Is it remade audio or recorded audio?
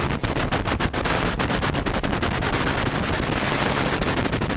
recorded